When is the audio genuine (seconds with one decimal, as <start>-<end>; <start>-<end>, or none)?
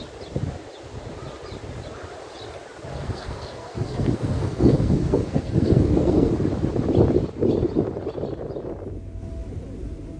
0.0-2.9; 6.3-10.2